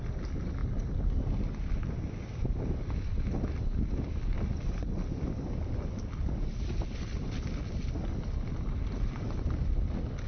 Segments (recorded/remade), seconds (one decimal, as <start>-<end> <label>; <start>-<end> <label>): 0.0-10.3 recorded